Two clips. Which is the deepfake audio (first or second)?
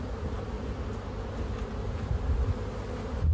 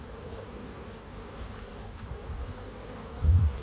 second